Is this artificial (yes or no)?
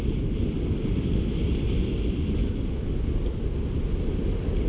no